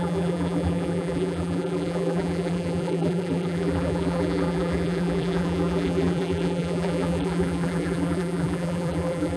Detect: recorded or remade remade